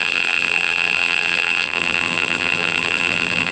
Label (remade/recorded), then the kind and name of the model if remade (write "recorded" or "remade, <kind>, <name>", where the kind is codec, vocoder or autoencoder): remade, vocoder, BigVGAN v2